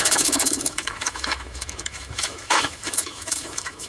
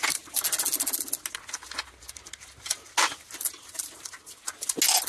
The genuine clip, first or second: second